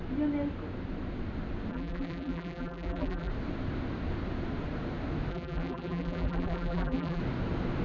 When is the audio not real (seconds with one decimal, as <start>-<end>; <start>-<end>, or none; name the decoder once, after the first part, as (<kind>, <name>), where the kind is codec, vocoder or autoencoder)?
1.7-3.3 (vocoder, BigVGAN v2); 5.3-7.2